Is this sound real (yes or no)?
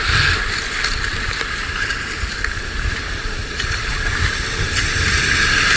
yes